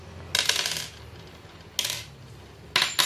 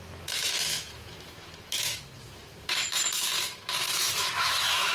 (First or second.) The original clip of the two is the first